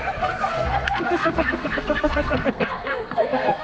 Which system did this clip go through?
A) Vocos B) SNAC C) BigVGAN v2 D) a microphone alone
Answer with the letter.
B